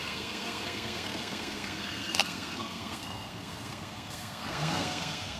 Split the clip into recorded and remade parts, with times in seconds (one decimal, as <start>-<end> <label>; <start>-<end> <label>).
0.0-5.4 remade